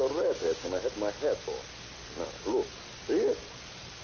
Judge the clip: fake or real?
real